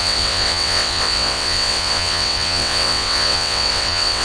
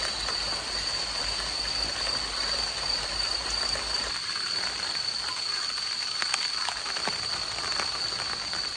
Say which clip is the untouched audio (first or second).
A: second